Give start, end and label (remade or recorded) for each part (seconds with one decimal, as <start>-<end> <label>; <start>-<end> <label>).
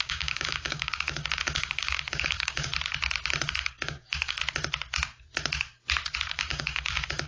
0.0-2.7 remade; 2.7-3.5 recorded; 3.5-4.4 remade; 4.4-6.3 recorded; 6.3-7.3 remade